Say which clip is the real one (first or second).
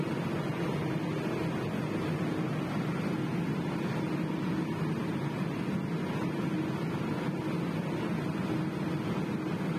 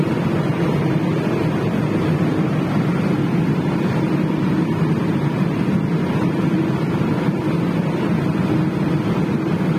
first